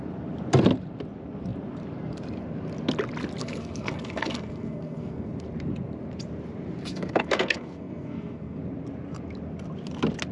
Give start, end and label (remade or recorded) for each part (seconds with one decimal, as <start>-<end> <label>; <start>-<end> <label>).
0.0-3.4 recorded; 3.4-5.3 remade; 5.3-6.9 recorded; 6.9-8.6 remade; 8.6-10.3 recorded